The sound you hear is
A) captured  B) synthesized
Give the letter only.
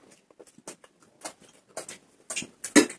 A